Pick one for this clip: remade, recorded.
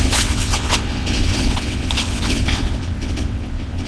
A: remade